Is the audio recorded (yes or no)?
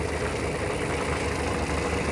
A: yes